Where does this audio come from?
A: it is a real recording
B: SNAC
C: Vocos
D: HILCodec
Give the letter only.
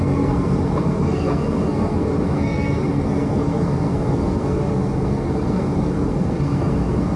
B